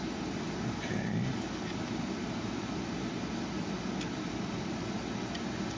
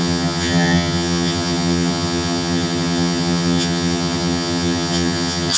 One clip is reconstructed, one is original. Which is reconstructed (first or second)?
second